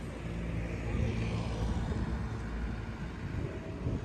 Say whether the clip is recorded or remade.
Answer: recorded